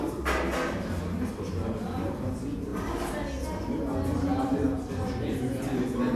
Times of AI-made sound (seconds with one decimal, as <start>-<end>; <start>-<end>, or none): none